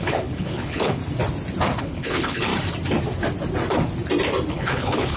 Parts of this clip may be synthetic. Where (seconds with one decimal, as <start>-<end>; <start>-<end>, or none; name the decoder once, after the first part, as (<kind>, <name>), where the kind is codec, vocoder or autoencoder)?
0.0-1.0 (codec, HILCodec); 1.8-2.5; 4.5-5.2